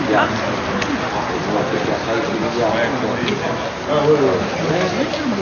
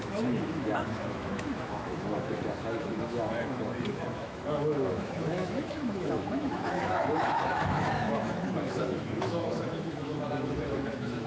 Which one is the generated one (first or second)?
second